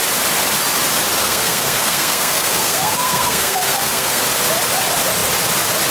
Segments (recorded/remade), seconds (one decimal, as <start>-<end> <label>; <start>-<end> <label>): 0.0-1.2 recorded; 1.2-4.2 remade; 4.2-5.9 recorded